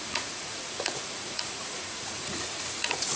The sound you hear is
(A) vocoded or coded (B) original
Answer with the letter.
A